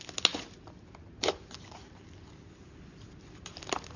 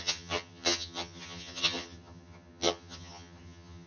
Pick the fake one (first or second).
second